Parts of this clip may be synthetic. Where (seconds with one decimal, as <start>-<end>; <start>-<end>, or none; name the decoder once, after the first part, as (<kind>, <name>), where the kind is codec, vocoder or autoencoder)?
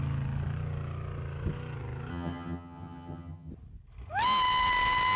2.1-3.5 (vocoder, HiFi-GAN)